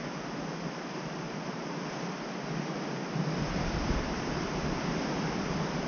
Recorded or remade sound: remade